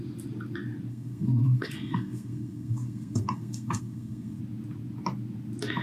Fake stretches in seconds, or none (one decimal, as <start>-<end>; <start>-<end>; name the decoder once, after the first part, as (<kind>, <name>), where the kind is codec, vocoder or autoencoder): 0.9-4.4 (codec, SNAC)

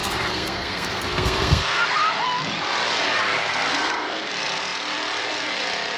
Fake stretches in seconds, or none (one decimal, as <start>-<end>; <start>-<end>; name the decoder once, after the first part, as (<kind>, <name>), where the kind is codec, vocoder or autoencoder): 0.0-1.8 (codec, SNAC); 3.7-4.3

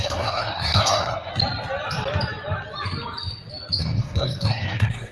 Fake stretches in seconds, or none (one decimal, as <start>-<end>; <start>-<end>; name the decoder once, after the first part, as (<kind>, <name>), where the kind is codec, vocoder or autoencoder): 0.0-1.3 (codec, SNAC); 3.8-5.1